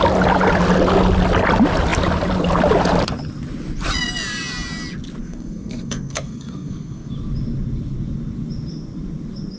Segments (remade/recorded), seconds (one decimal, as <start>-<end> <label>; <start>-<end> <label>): 0.0-5.2 recorded; 5.2-7.1 remade; 7.1-9.6 recorded